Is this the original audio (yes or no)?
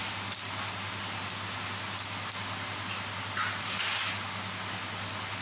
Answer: yes